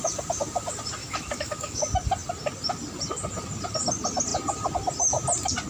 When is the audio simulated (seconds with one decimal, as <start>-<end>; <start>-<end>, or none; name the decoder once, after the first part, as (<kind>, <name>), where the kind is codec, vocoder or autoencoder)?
1.0-1.8 (autoencoder, DAC-VAE)

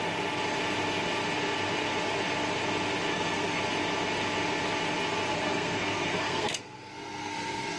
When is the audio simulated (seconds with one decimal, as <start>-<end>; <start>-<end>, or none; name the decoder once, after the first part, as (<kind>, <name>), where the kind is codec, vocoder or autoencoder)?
3.1-3.6 (codec, SNAC); 5.3-7.8

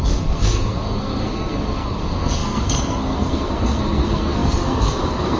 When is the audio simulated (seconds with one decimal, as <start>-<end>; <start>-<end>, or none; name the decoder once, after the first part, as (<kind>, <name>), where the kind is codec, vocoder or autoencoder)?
0.0-5.4 (codec, SNAC)

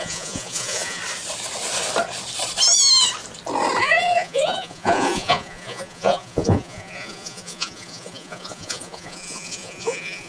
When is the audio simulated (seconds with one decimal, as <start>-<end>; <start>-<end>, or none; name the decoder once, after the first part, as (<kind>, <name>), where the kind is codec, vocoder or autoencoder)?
0.0-1.0 (vocoder, Vocos); 3.8-10.3

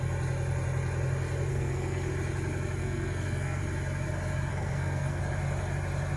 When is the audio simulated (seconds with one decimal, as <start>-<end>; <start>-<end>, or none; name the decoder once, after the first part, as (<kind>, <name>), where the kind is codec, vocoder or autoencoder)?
1.5-2.1 (codec, SNAC); 2.8-3.6; 4.5-5.2

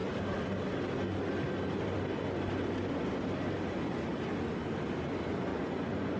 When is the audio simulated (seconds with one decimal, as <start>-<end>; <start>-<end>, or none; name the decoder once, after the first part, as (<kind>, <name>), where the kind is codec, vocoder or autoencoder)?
5.5-6.2 (vocoder, Vocos)

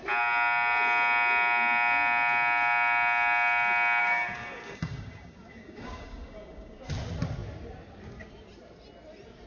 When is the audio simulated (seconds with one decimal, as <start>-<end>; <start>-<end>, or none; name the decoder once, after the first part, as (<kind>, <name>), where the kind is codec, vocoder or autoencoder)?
4.0-6.9 (codec, DAC)